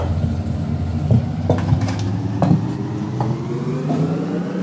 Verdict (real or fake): real